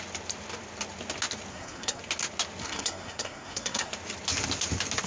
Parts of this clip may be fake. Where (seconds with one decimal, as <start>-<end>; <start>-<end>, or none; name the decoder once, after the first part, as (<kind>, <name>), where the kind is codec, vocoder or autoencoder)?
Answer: 1.5-2.0 (codec, SNAC); 2.6-3.9